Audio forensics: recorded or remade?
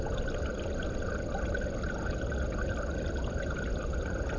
recorded